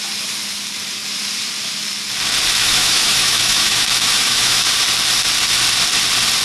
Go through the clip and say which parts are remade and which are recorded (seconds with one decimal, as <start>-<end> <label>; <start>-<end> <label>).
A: 0.0-2.6 recorded; 2.6-4.7 remade; 4.7-6.4 recorded